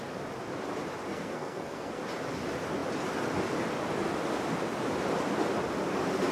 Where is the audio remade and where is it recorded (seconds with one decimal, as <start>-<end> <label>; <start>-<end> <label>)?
0.0-1.1 recorded; 1.1-2.0 remade; 2.0-6.3 recorded